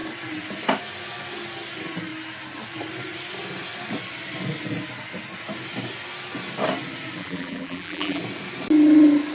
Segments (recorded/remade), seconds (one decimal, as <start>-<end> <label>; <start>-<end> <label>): 0.0-7.2 recorded; 7.2-8.2 remade; 8.2-9.3 recorded